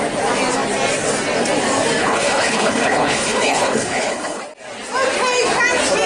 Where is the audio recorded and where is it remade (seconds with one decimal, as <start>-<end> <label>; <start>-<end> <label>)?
0.0-2.0 recorded; 2.0-4.4 remade; 4.4-6.1 recorded